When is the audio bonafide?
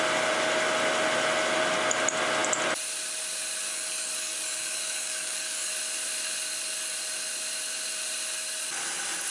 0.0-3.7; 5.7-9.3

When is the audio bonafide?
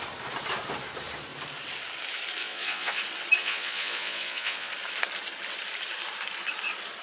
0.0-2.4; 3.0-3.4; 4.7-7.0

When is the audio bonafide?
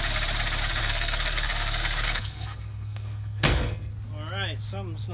0.0-0.8; 3.9-5.1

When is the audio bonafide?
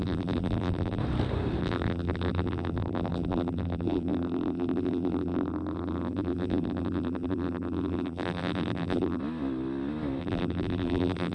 1.0-1.6; 9.2-10.2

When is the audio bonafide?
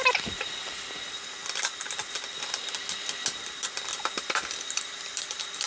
0.0-5.7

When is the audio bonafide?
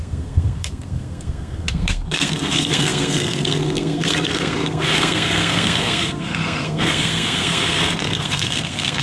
none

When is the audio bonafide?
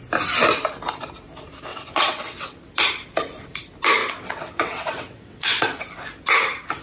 0.0-1.7; 2.6-4.0; 5.8-6.8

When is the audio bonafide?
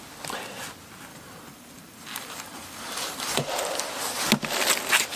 0.0-1.1; 3.5-5.2